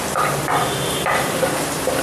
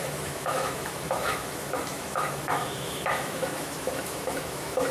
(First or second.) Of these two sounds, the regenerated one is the second